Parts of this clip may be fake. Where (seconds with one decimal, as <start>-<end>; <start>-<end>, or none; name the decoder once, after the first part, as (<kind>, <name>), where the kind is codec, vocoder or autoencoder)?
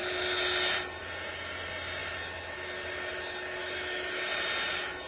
3.6-4.3 (autoencoder, DAC-VAE)